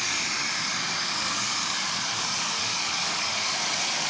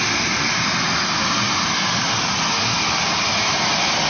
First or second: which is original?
second